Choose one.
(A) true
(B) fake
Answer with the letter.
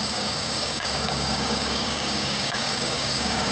B